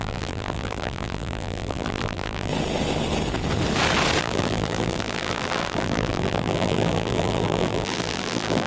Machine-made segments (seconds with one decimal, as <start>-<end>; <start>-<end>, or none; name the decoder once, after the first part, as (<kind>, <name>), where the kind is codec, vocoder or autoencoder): 0.0-2.5 (vocoder, BigVGAN v2); 4.2-8.7

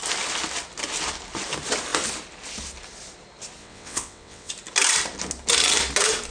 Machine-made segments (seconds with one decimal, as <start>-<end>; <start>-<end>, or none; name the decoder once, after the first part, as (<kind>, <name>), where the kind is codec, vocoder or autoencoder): 3.6-4.5 (vocoder, WaveNeXt)

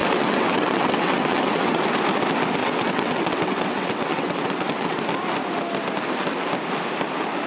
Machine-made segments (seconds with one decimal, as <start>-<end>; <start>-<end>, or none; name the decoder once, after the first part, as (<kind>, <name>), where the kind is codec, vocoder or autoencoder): 0.0-1.8 (vocoder, WaveNeXt); 2.6-5.0